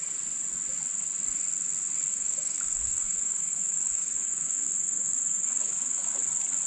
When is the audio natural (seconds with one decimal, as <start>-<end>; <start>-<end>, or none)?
0.0-2.1; 6.1-6.7